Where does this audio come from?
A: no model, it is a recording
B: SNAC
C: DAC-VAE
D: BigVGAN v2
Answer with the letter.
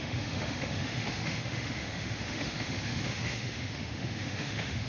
C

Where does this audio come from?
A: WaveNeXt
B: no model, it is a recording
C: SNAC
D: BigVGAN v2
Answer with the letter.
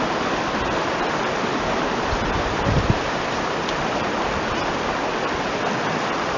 B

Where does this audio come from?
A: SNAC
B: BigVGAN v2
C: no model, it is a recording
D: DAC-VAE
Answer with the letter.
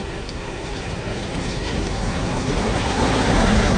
A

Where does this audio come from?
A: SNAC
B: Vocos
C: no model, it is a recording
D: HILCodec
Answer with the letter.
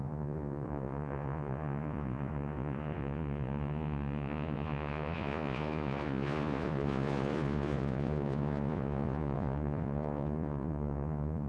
B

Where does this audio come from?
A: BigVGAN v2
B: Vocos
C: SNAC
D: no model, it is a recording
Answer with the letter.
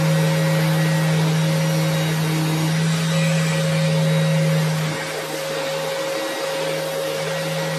D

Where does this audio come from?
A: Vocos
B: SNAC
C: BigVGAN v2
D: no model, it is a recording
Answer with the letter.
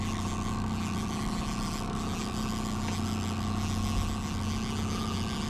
D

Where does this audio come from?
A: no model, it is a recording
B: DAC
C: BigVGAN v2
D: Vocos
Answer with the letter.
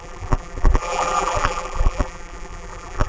C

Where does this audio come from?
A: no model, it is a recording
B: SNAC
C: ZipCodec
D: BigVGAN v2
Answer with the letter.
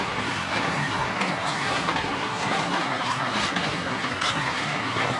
B